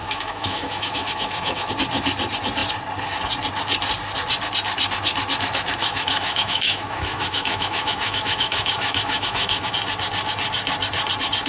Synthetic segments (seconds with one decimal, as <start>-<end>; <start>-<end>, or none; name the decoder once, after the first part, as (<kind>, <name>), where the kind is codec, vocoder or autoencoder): 0.0-1.7 (autoencoder, DAC-VAE); 5.8-9.7